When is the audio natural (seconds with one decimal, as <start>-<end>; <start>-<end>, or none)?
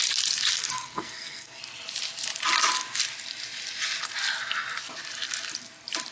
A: 0.0-0.5; 1.6-6.1